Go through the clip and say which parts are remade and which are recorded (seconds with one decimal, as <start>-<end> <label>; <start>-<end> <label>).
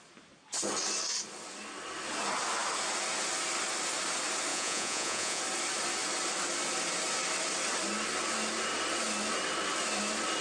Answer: 0.0-4.5 recorded; 4.5-5.4 remade; 5.4-10.4 recorded